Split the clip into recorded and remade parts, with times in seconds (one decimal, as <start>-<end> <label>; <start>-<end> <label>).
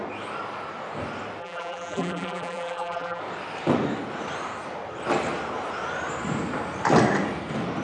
0.0-1.4 recorded; 1.4-3.2 remade; 3.2-7.8 recorded